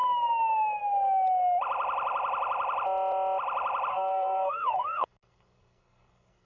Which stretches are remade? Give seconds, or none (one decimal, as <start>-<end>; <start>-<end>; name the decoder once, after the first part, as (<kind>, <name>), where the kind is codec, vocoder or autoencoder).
3.9-6.5 (codec, SNAC)